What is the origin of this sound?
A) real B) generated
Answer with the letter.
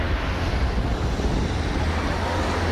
A